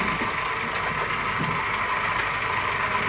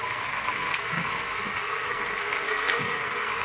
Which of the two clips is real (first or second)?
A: first